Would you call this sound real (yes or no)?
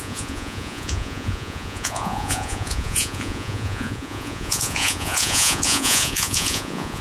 no